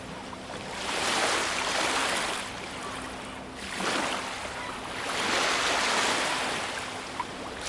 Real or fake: real